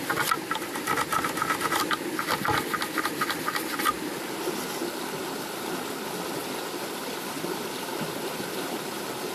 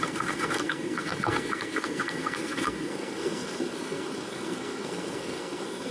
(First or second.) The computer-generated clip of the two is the second